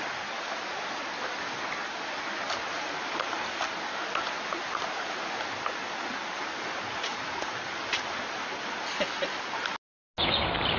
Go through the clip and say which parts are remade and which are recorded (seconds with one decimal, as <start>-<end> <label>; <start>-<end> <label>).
0.0-2.7 recorded; 2.7-3.6 remade; 3.6-10.8 recorded